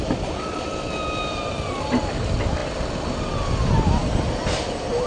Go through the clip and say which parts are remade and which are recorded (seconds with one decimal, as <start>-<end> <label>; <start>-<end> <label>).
0.0-5.1 recorded